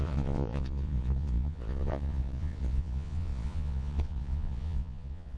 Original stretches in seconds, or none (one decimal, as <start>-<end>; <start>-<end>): none